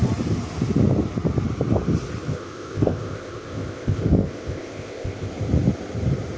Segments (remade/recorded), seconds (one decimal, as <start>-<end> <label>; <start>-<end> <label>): 0.0-2.3 recorded; 2.3-5.3 remade; 5.3-6.4 recorded